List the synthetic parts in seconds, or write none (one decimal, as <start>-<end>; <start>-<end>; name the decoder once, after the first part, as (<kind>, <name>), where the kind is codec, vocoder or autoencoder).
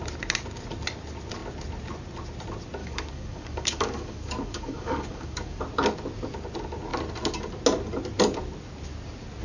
2.8-5.6 (codec, DAC)